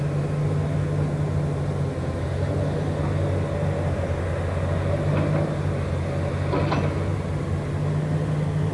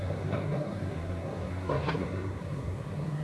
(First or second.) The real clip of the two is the first